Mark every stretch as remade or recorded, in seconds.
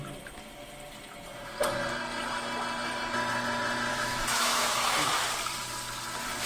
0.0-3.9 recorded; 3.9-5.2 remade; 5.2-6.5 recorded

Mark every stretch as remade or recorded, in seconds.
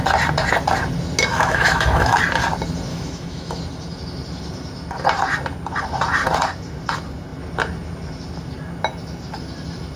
0.0-1.3 recorded; 1.3-2.2 remade; 2.2-2.9 recorded; 2.9-3.6 remade; 3.6-10.0 recorded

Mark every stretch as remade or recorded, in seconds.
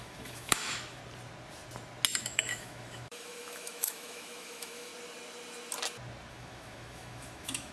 0.0-1.0 remade; 1.0-2.2 recorded; 2.2-4.9 remade; 4.9-6.3 recorded; 6.3-7.7 remade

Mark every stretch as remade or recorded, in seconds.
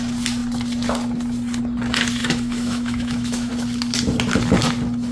0.0-2.2 recorded; 2.2-3.5 remade; 3.5-5.1 recorded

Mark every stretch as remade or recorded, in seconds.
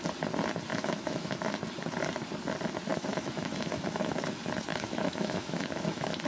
0.0-0.7 recorded; 0.7-1.6 remade; 1.6-2.9 recorded; 2.9-4.2 remade; 4.2-4.7 recorded; 4.7-6.3 remade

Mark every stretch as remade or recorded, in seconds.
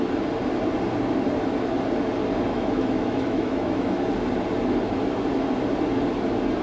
0.0-2.5 recorded; 2.5-4.1 remade; 4.1-6.6 recorded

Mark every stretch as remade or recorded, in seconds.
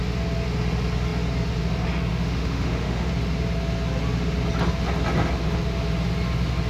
0.0-2.1 recorded; 2.1-3.1 remade; 3.1-6.7 recorded